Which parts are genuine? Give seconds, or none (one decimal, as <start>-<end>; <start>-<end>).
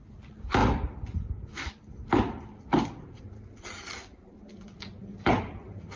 0.0-6.0